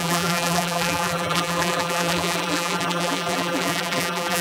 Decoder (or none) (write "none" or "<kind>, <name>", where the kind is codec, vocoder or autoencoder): vocoder, BigVGAN v2